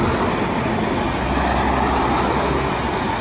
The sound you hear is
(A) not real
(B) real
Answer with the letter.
B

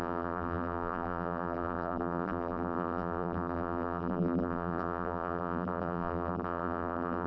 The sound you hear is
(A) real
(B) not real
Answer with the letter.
B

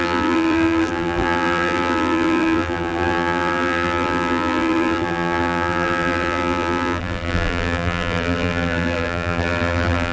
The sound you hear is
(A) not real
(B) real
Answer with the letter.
A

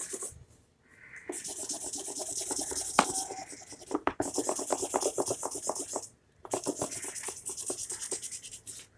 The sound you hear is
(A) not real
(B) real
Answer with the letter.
B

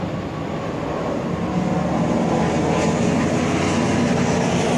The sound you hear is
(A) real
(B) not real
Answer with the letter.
A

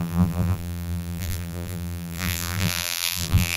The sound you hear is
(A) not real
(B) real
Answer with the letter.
A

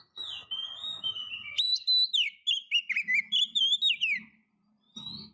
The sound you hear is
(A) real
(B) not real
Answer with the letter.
A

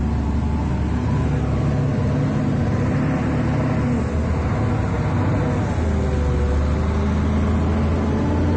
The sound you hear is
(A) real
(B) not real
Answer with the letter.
A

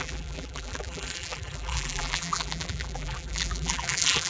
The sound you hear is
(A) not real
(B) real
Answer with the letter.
A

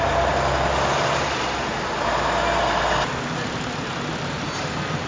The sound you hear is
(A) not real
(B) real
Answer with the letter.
B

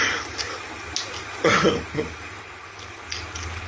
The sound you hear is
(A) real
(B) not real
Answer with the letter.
A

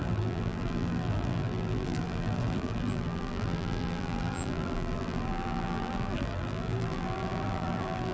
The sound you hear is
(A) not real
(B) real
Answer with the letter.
A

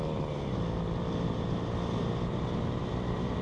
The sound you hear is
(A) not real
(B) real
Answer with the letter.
B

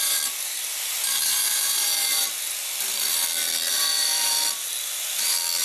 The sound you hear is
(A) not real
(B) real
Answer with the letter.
A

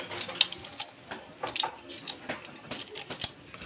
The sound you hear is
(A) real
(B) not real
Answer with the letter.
A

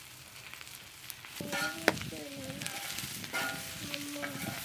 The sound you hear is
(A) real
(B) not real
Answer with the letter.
B